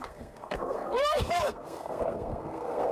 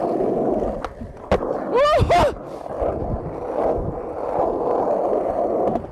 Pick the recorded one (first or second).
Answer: second